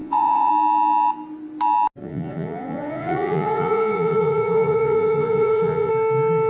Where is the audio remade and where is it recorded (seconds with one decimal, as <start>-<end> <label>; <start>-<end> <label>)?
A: 0.0-0.5 remade; 0.5-2.0 recorded; 2.0-5.9 remade; 5.9-6.5 recorded